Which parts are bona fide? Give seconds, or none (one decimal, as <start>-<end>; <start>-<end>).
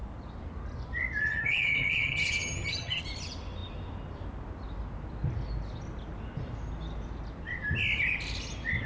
0.0-1.2; 3.0-8.9